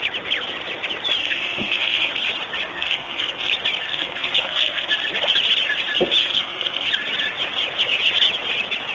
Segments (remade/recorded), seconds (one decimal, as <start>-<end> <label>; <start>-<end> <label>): 0.0-1.2 recorded; 1.2-2.1 remade; 2.1-2.7 recorded; 2.7-3.5 remade; 3.5-3.9 recorded; 3.9-4.9 remade; 4.9-6.2 recorded; 6.2-6.9 remade; 6.9-8.9 recorded